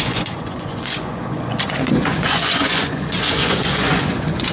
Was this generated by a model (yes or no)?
yes